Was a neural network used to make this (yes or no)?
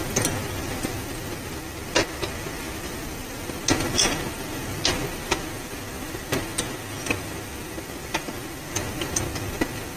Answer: no